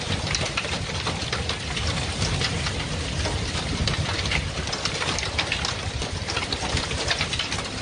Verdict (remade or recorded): recorded